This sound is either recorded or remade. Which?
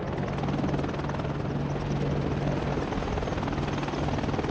recorded